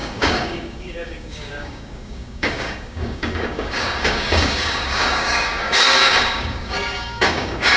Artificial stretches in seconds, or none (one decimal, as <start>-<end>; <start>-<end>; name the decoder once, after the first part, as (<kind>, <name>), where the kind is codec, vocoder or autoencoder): 0.0-7.8 (codec, DAC)